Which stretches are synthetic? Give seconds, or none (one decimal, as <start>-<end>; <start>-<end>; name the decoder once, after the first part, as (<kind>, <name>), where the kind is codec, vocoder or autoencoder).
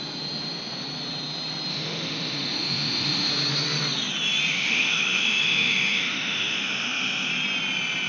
1.7-3.3 (autoencoder, DAC-VAE); 4.5-7.3